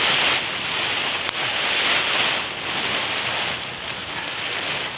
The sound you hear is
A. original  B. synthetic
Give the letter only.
A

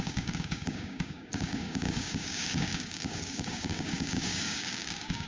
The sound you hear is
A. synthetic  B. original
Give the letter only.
A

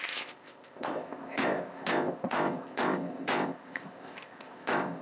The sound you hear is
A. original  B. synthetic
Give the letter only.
B